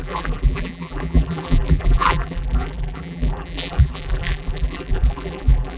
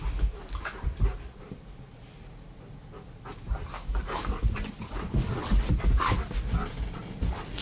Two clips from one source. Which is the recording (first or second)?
second